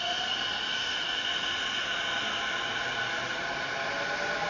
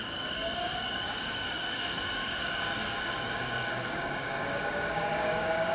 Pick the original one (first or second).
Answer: first